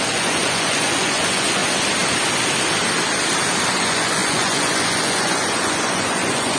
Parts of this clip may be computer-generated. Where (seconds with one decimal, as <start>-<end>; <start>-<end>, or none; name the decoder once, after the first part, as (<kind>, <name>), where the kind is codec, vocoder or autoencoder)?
0.0-1.6 (vocoder, Vocos); 3.8-6.6